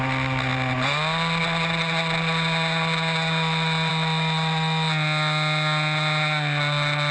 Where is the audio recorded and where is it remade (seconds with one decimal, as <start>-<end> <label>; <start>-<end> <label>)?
0.0-7.1 recorded